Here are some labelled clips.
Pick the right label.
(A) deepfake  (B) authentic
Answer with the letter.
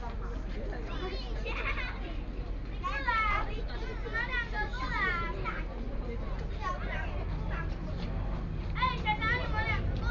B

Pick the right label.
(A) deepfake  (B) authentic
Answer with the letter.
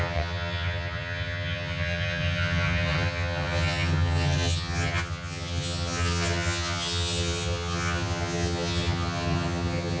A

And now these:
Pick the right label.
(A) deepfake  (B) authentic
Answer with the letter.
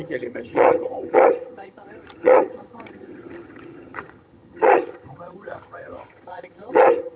A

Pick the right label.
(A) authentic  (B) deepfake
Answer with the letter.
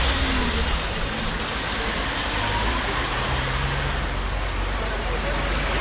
A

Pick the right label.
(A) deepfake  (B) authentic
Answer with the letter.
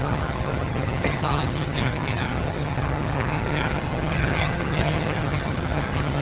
A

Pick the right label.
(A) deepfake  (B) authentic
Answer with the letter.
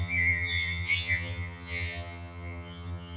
A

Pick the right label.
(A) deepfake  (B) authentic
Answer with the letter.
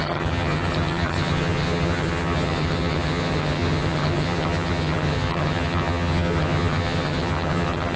A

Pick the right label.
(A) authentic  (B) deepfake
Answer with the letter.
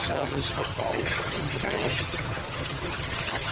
B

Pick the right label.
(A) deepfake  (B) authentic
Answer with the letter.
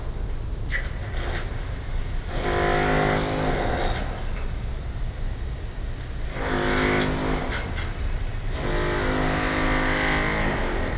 B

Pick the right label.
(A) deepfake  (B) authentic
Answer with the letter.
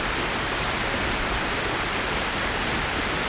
B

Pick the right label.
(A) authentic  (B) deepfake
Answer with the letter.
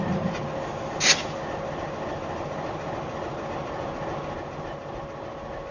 A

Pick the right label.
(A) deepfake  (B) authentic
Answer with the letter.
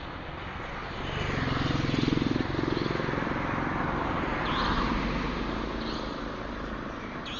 B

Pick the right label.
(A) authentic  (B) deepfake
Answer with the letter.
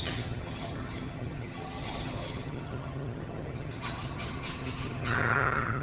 B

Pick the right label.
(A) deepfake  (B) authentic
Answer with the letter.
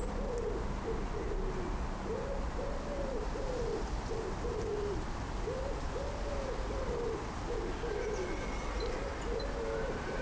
B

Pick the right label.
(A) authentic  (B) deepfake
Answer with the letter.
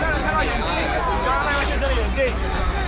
A